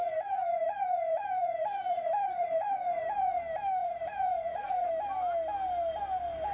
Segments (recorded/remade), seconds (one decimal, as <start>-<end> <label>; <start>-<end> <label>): 0.0-3.4 remade; 3.4-3.8 recorded; 3.8-4.9 remade; 4.9-6.5 recorded